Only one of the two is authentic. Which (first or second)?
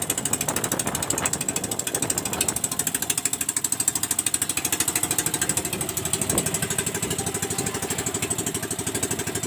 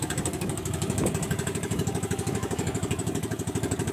first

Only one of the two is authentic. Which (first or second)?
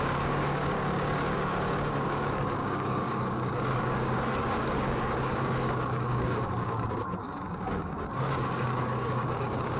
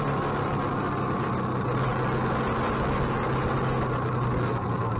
second